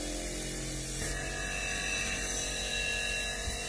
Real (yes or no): yes